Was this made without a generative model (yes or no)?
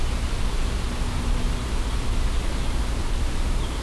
yes